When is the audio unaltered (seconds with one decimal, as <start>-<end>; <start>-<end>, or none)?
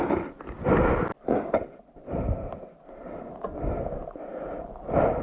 0.0-5.2